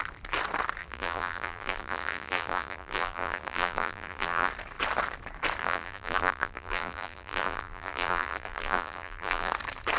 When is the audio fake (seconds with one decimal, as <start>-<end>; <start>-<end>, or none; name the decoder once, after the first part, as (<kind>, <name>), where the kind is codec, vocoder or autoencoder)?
0.8-4.5 (vocoder, BigVGAN v2); 5.6-9.5